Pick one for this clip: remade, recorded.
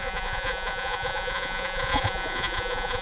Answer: remade